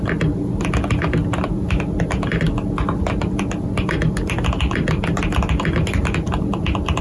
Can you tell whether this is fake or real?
real